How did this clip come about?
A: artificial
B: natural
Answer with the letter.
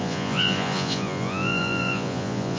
A